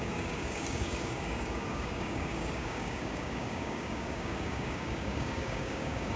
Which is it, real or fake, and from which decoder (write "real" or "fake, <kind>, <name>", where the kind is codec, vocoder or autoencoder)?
fake, codec, DAC